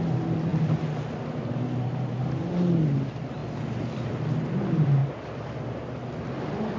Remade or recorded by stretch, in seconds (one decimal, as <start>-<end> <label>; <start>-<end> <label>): 0.0-6.8 recorded